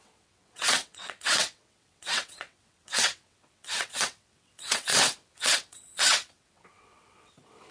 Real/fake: fake